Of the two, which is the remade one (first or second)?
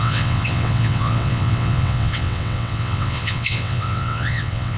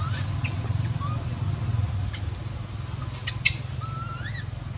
first